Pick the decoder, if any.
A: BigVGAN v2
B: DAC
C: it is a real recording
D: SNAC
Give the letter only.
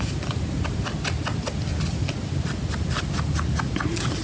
C